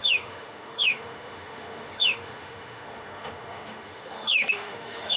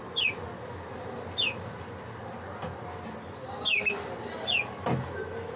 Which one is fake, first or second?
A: first